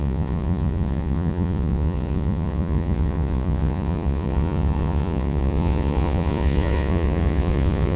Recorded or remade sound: remade